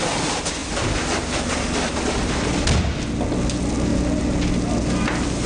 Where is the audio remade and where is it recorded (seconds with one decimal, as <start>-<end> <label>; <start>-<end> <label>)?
0.0-5.5 recorded

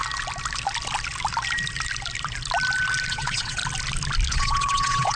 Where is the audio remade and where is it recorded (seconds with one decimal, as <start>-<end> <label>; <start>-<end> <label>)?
0.0-3.1 recorded; 3.1-3.6 remade; 3.6-4.3 recorded; 4.3-5.2 remade

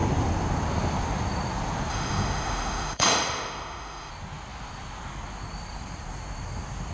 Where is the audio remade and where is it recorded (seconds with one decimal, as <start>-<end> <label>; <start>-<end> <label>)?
0.0-1.9 recorded; 1.9-4.1 remade; 4.1-6.9 recorded

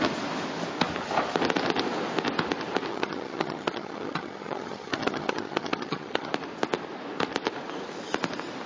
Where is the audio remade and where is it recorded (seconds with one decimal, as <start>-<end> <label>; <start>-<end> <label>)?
0.0-2.9 recorded; 2.9-6.3 remade; 6.3-8.7 recorded